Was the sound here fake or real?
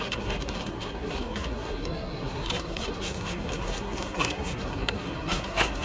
fake